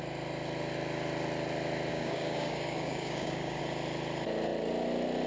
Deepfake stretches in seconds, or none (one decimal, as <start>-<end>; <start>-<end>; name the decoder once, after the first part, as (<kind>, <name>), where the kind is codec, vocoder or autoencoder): 1.9-3.6 (codec, DAC)